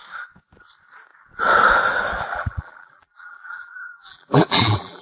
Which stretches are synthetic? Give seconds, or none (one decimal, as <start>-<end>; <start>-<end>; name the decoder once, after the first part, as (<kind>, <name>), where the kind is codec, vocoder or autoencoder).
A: 2.3-5.0 (vocoder, BigVGAN v2)